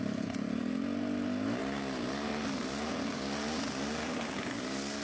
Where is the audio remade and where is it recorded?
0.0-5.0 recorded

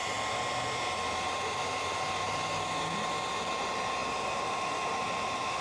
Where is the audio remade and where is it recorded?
0.0-4.0 recorded; 4.0-5.6 remade

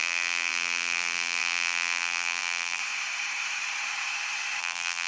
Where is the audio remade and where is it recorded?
0.0-2.8 remade; 2.8-4.6 recorded; 4.6-5.1 remade

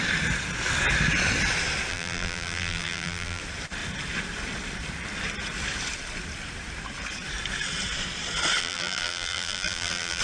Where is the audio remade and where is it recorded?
0.0-1.9 recorded; 1.9-3.4 remade; 3.4-8.6 recorded; 8.6-10.2 remade

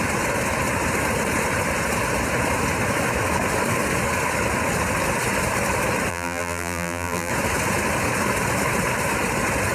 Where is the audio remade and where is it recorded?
0.0-6.1 recorded; 6.1-7.3 remade; 7.3-9.7 recorded

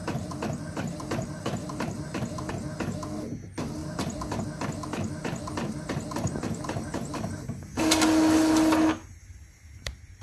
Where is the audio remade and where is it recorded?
0.0-2.5 remade; 2.5-3.8 recorded; 3.8-4.4 remade; 4.4-9.0 recorded; 9.0-10.2 remade